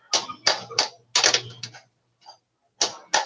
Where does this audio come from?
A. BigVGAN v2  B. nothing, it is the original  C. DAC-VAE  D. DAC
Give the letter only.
B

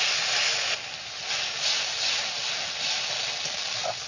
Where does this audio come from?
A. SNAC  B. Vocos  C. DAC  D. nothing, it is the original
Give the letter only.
D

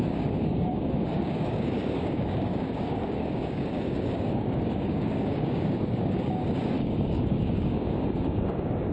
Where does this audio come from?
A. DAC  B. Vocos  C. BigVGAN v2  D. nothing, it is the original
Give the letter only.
A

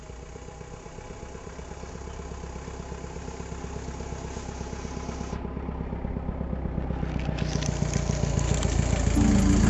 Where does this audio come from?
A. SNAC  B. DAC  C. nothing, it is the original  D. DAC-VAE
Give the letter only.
C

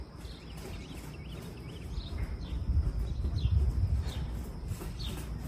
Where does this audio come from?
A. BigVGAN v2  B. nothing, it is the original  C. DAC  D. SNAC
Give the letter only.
B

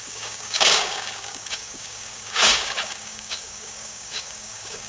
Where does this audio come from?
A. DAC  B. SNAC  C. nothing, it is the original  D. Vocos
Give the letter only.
A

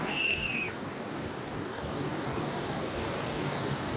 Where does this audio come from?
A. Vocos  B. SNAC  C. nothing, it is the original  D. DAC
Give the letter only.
D